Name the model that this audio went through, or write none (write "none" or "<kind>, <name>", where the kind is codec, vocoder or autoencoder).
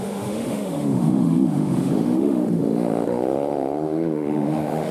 autoencoder, DAC-VAE